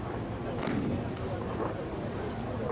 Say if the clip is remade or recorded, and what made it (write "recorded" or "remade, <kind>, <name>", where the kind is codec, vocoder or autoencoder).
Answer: recorded